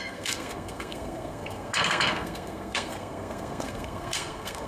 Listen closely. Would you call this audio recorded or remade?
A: remade